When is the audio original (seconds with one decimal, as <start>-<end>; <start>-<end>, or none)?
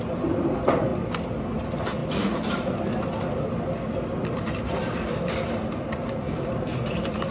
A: 0.9-1.6; 2.0-5.9